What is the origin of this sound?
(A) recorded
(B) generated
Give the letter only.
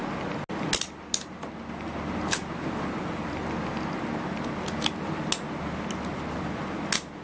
A